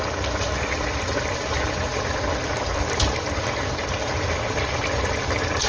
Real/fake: real